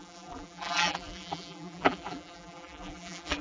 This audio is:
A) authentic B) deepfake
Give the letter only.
B